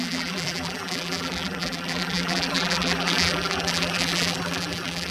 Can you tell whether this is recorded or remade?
remade